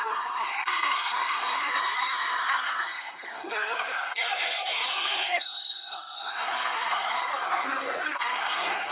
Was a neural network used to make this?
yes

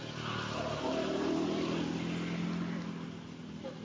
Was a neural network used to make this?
no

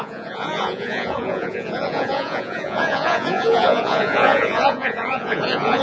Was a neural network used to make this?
yes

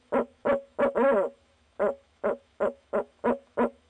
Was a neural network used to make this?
yes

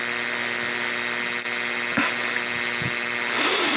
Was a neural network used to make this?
no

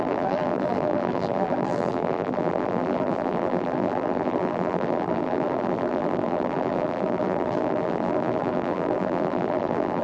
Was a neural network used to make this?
yes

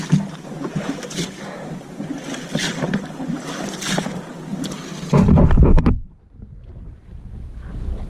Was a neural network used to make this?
no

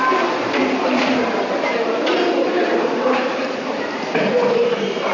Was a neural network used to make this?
yes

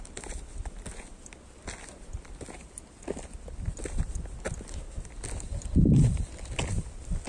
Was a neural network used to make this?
no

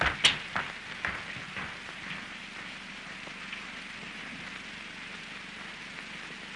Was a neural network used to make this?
no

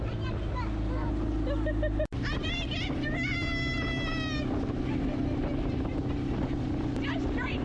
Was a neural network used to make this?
no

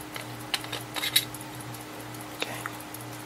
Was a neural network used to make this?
no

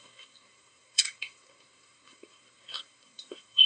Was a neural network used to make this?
yes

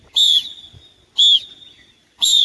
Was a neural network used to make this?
no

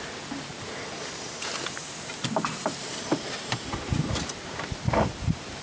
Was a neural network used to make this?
yes